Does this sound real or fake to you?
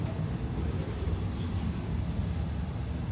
real